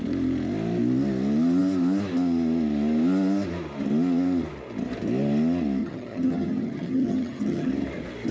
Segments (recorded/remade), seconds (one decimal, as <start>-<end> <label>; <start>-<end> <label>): 0.0-5.8 recorded; 5.8-7.7 remade; 7.7-8.3 recorded